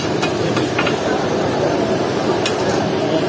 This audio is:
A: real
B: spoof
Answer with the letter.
B